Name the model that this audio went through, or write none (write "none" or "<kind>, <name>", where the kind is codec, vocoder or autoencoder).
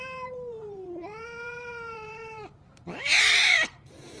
vocoder, BigVGAN v2